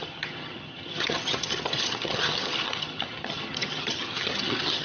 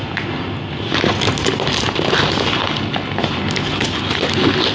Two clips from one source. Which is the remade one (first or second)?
first